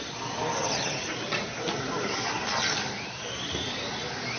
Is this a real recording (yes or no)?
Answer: yes